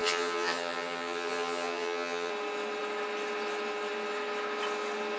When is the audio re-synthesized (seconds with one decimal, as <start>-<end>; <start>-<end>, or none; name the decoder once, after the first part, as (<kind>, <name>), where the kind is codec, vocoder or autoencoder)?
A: 0.0-2.3 (vocoder, HiFi-GAN)